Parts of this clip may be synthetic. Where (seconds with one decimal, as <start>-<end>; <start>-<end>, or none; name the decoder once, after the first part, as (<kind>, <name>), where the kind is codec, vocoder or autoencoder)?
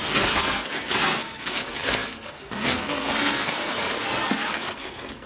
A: 0.0-5.3 (codec, SNAC)